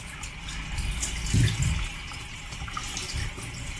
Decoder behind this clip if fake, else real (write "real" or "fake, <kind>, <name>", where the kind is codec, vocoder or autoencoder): real